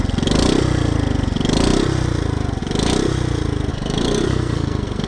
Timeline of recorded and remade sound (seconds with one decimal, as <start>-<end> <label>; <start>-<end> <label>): 0.0-3.7 recorded; 3.7-5.1 remade